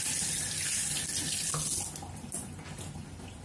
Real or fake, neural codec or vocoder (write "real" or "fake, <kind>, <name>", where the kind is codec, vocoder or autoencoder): real